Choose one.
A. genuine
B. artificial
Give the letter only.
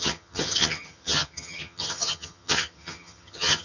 B